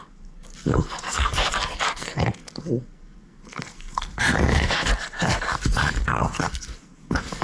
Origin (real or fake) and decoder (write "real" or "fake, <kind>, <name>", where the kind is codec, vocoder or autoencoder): fake, codec, SNAC